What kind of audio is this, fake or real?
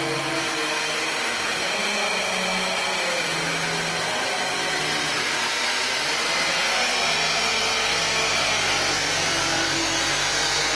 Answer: real